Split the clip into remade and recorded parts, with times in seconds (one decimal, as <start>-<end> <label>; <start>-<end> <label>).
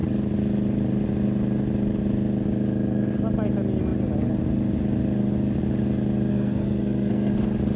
0.0-6.3 recorded; 6.3-7.3 remade; 7.3-7.8 recorded